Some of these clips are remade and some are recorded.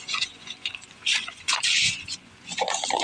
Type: remade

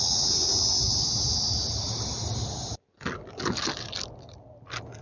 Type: recorded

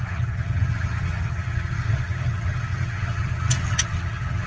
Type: remade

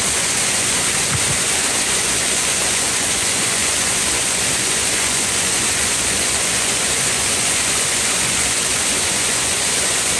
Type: remade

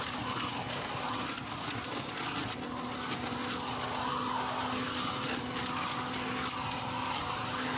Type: recorded